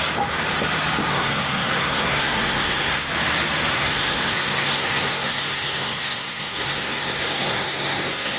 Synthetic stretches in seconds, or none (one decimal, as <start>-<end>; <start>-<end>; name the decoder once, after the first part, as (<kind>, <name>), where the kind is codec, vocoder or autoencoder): 1.1-3.1 (codec, SNAC); 3.7-8.4